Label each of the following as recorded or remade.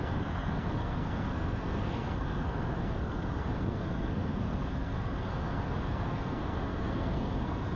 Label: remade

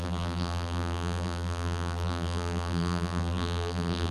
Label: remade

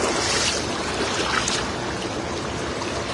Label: recorded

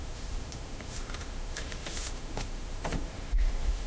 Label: remade